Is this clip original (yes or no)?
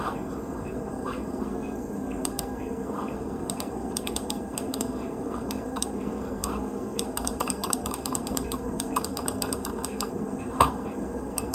no